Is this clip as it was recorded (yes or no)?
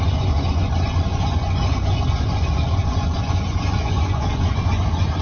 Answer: no